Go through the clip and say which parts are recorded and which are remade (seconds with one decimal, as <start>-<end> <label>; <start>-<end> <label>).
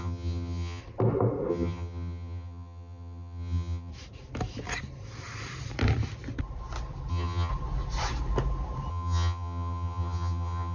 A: 0.0-0.8 remade; 0.8-1.5 recorded; 1.5-3.9 remade; 3.9-7.1 recorded; 7.1-7.5 remade; 7.5-8.9 recorded; 8.9-10.7 remade